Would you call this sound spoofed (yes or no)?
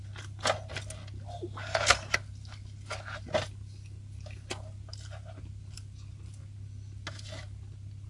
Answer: no